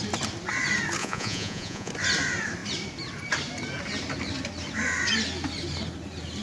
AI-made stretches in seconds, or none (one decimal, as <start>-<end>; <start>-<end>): 1.0-1.9